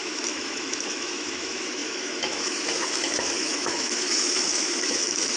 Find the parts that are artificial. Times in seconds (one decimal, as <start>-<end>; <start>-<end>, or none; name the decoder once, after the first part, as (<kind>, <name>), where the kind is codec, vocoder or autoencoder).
0.0-5.4 (autoencoder, DAC-VAE)